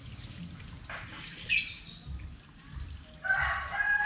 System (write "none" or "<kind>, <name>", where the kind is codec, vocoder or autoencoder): none